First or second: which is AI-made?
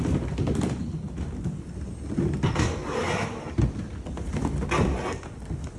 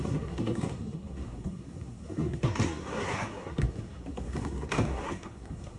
second